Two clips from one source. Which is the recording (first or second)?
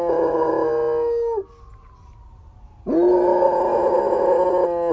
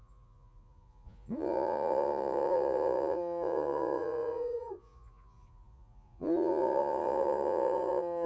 first